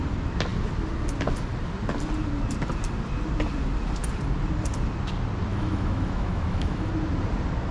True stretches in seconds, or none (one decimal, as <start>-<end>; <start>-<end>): 0.0-5.5; 6.9-7.7